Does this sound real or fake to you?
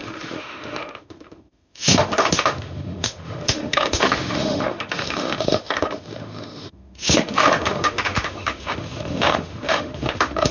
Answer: fake